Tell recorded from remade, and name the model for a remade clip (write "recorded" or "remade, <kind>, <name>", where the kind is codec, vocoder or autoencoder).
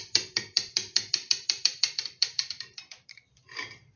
remade, vocoder, BigVGAN v2